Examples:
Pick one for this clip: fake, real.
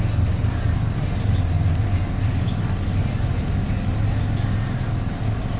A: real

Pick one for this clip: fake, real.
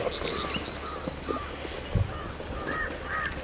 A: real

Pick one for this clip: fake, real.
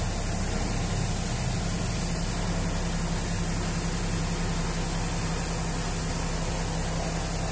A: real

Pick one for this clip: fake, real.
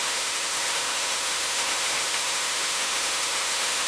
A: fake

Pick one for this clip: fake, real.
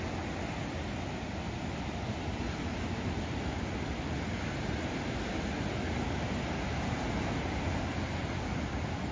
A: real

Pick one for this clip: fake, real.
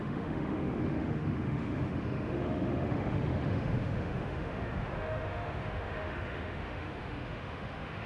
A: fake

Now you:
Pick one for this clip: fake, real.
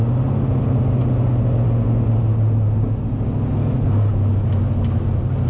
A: real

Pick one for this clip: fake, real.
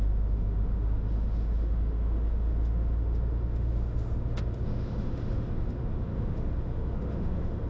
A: fake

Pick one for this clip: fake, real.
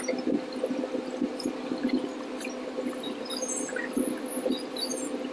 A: real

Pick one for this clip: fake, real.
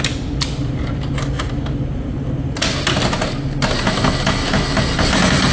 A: real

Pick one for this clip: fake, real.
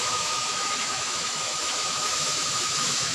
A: fake